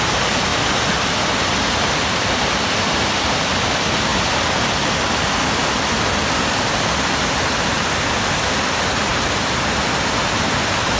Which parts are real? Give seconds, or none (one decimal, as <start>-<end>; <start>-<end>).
0.5-2.1; 4.1-6.2; 9.1-10.2